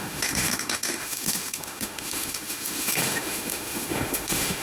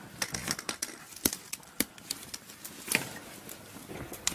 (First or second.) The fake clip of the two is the first